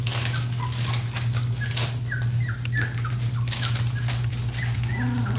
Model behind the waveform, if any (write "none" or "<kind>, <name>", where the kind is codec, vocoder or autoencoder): none